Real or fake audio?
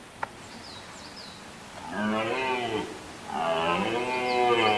real